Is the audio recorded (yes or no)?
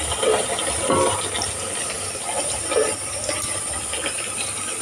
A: yes